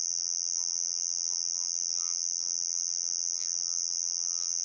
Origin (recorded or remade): remade